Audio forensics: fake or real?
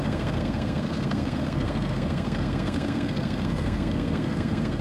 fake